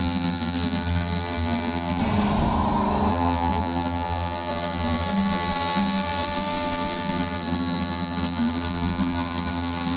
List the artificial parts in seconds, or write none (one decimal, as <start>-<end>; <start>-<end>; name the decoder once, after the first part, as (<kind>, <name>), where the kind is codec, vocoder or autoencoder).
0.0-2.0 (vocoder, BigVGAN v2); 3.1-10.0